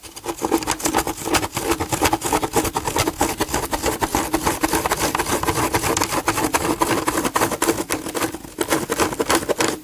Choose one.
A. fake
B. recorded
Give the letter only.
B